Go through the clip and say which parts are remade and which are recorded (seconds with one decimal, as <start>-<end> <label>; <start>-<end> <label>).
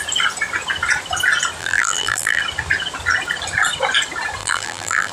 0.0-1.6 recorded; 1.6-2.4 remade; 2.4-4.4 recorded; 4.4-5.1 remade